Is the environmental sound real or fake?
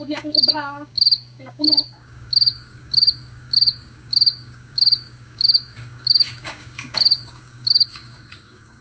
fake